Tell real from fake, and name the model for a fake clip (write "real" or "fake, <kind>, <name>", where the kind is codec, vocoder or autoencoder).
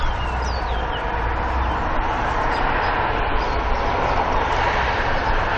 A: real